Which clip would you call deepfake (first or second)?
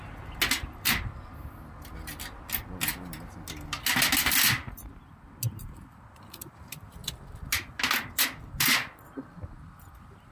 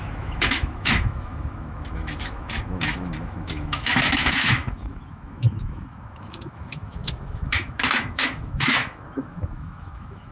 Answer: second